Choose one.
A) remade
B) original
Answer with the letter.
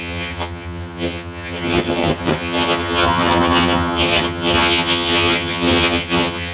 A